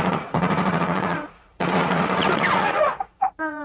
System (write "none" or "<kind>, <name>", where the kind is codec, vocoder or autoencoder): vocoder, Vocos